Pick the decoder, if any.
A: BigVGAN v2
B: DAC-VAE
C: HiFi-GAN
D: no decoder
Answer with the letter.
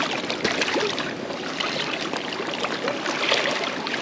D